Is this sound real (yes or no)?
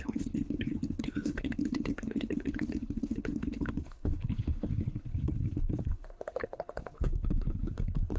no